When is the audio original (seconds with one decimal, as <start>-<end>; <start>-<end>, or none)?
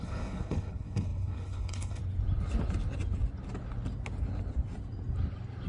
2.0-5.7